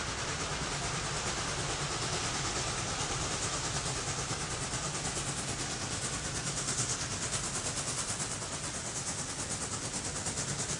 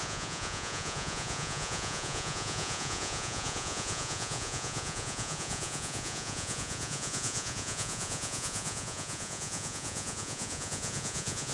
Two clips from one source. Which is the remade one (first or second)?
second